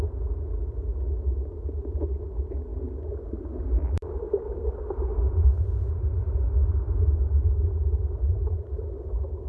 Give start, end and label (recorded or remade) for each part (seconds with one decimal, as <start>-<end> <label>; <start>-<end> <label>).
0.0-9.5 recorded

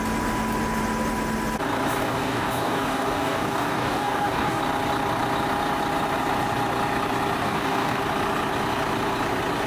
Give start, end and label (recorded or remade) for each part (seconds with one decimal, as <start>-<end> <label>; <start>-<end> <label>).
0.0-2.0 recorded; 2.0-4.6 remade; 4.6-7.4 recorded; 7.4-8.0 remade; 8.0-9.7 recorded